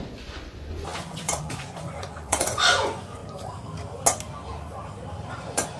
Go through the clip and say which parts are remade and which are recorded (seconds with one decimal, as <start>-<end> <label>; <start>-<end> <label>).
0.0-3.2 remade; 3.2-5.3 recorded; 5.3-5.8 remade